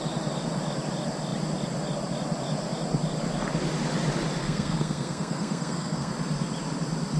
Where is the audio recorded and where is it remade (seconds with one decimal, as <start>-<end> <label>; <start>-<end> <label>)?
0.0-4.4 recorded; 4.4-6.1 remade; 6.1-7.2 recorded